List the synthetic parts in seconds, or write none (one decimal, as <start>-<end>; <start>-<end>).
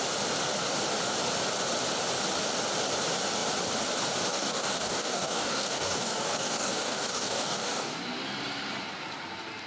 4.3-7.9